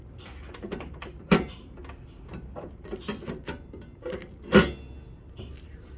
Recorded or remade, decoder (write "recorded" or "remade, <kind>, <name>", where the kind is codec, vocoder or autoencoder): recorded